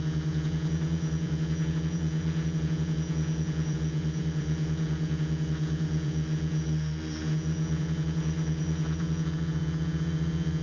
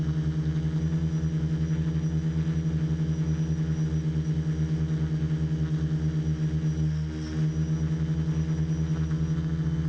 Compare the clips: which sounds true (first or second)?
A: second